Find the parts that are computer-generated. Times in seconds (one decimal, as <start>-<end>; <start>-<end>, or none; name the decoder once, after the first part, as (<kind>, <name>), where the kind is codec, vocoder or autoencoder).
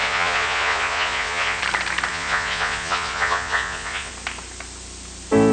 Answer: 0.0-1.6 (vocoder, Vocos); 2.1-4.1